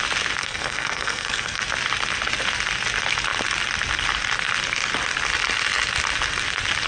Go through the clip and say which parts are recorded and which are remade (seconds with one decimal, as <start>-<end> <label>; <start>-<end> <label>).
0.0-0.4 recorded; 0.4-1.6 remade; 1.6-6.9 recorded